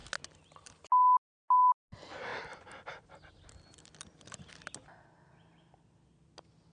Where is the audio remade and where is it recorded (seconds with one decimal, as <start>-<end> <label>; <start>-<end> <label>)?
0.0-6.7 recorded